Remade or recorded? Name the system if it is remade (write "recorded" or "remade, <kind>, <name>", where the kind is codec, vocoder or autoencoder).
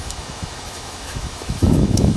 remade, autoencoder, DAC-VAE